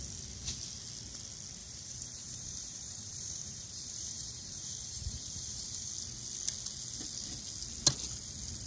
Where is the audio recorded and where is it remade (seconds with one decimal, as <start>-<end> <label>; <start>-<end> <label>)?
0.0-1.6 recorded; 1.6-5.9 remade; 5.9-8.7 recorded